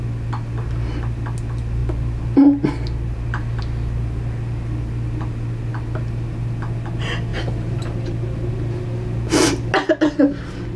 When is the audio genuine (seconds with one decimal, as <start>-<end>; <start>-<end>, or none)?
0.0-10.8